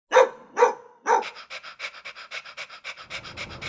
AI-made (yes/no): no